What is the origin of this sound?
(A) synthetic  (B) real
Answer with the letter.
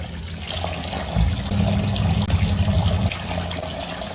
B